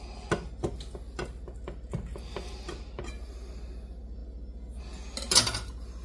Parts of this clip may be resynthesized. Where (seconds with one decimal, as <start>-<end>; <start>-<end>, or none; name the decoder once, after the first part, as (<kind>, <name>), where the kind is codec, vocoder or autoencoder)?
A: none